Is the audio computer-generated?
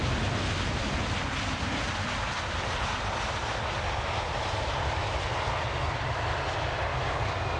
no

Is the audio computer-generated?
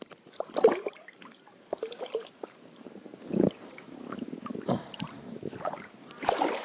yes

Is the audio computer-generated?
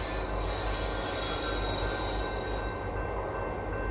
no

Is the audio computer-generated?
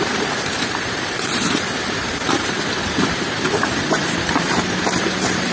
yes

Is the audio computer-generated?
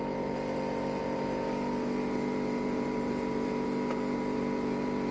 yes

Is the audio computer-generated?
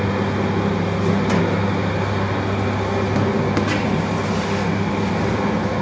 no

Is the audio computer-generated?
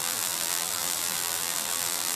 yes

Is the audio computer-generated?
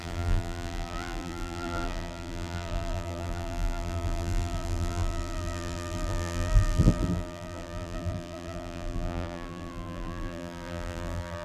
yes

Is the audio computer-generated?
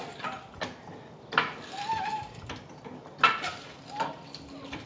no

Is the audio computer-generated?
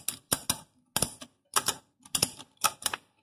no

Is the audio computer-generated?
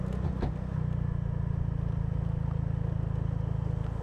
no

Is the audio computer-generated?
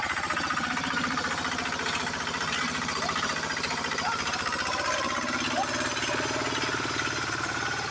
yes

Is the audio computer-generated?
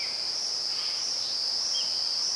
yes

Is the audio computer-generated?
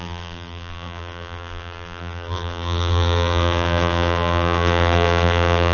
yes